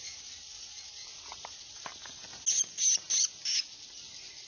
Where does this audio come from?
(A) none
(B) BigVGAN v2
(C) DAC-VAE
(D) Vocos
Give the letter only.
A